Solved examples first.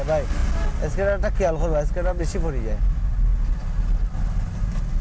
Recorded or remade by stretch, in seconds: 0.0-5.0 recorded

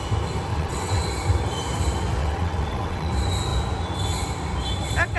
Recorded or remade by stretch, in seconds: 0.0-0.5 recorded; 0.5-1.0 remade; 1.0-2.2 recorded; 2.2-3.1 remade; 3.1-5.2 recorded

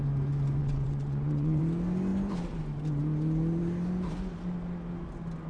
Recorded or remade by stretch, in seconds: 0.0-0.6 recorded; 0.6-1.6 remade; 1.6-5.5 recorded

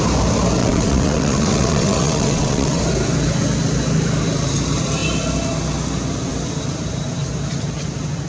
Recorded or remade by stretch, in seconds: 0.0-0.6 recorded; 0.6-2.8 remade; 2.8-8.3 recorded

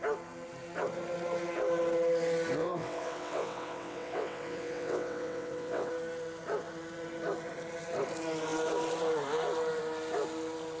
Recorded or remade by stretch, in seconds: 0.0-2.6 recorded; 2.6-5.9 remade; 5.9-10.8 recorded